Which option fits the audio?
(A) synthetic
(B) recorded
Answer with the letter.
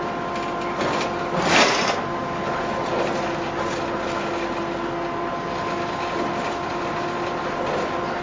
B